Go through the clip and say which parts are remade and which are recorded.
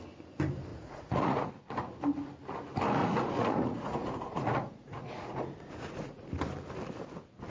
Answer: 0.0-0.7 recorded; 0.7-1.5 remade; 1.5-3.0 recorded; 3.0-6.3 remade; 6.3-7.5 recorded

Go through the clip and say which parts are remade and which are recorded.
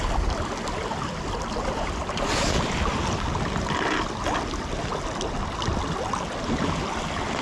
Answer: 0.0-7.4 recorded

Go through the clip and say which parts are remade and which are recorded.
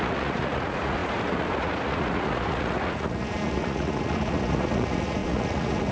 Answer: 0.0-5.9 remade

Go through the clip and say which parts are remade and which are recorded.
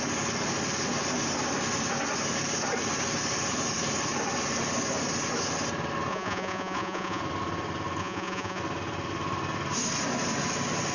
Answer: 0.0-6.1 recorded; 6.1-7.2 remade; 7.2-8.0 recorded; 8.0-8.6 remade; 8.6-10.9 recorded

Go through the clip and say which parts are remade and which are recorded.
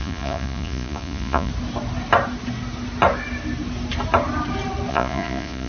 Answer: 0.0-1.5 remade; 1.5-4.9 recorded; 4.9-5.7 remade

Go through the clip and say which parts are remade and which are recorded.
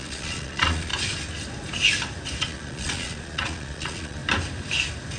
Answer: 0.0-0.9 remade; 0.9-2.4 recorded; 2.4-4.2 remade; 4.2-5.2 recorded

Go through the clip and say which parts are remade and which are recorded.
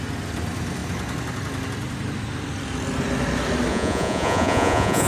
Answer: 0.0-3.7 recorded; 3.7-5.1 remade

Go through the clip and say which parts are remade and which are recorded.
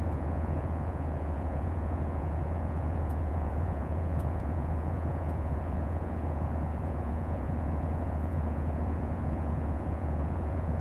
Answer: 0.0-10.8 remade